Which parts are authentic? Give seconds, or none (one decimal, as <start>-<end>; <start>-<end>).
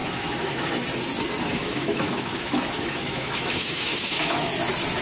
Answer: 0.7-1.5; 4.5-5.0